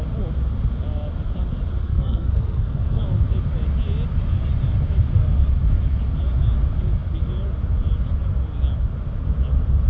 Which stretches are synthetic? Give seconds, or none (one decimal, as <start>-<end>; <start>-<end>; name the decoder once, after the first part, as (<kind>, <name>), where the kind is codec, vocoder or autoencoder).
1.8-3.0 (codec, SNAC)

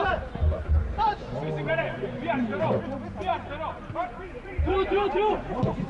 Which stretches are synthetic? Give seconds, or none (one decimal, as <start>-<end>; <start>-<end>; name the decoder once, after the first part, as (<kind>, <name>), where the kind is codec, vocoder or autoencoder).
0.0-3.3 (vocoder, BigVGAN v2); 4.3-5.9

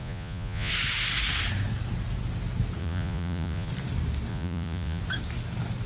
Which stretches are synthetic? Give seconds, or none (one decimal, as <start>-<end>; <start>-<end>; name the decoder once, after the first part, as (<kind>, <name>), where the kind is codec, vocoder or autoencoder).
0.0-0.7 (vocoder, Vocos); 2.8-3.7; 4.3-5.0